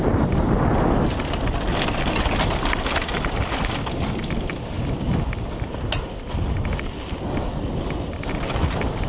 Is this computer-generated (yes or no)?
no